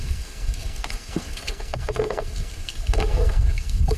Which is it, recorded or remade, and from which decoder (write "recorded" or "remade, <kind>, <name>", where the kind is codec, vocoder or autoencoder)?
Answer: remade, codec, SNAC